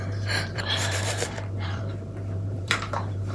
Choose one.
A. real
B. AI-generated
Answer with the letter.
B